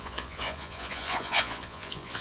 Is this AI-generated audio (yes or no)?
yes